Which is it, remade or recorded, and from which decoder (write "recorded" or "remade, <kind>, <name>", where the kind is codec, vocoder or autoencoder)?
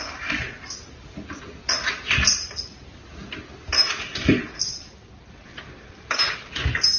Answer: recorded